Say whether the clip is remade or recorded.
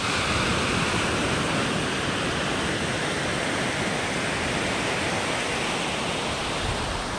recorded